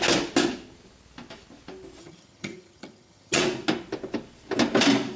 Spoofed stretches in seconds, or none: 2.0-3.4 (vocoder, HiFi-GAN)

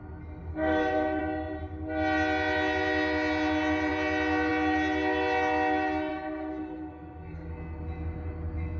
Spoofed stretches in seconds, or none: 0.5-1.2 (codec, SNAC); 6.1-7.5

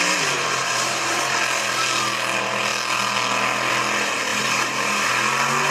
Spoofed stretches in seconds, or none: 0.6-1.2 (vocoder, BigVGAN v2); 4.3-5.1

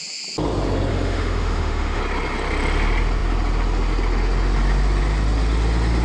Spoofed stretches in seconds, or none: 0.9-2.0 (autoencoder, DAC-VAE)

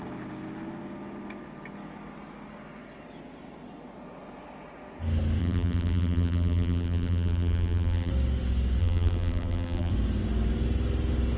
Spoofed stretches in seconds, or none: 5.4-8.1 (vocoder, BigVGAN v2); 8.8-9.9